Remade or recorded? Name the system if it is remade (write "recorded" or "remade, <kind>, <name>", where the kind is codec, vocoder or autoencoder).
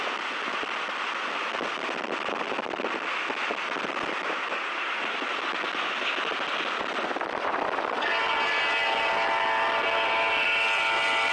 recorded